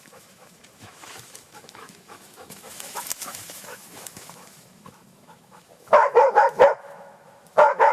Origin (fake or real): fake